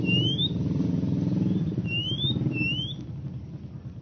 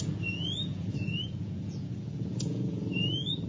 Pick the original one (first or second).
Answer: first